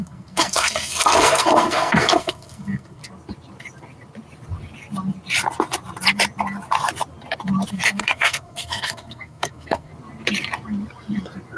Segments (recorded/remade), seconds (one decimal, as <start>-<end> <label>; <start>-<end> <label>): 0.0-3.0 remade; 3.0-7.7 recorded; 7.7-9.9 remade; 9.9-11.6 recorded